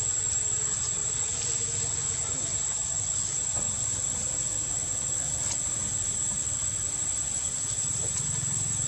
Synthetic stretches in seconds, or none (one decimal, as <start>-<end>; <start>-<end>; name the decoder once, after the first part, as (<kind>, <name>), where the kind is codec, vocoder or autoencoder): none